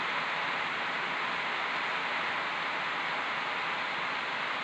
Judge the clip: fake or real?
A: real